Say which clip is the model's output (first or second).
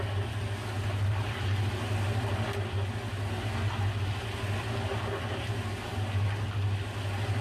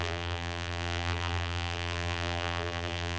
second